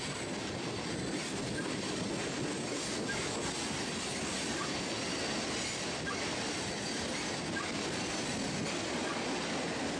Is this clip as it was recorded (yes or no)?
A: yes